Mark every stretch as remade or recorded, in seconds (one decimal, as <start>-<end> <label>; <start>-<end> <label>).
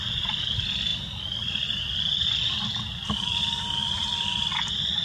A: 0.0-5.0 recorded